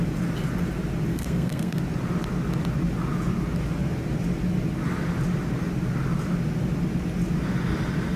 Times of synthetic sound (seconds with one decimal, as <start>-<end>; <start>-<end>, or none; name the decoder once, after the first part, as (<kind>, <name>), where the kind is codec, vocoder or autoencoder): 1.1-1.8 (codec, SNAC)